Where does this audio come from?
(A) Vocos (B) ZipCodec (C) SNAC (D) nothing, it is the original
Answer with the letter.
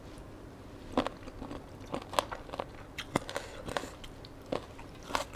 D